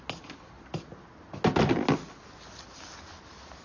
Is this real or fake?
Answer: real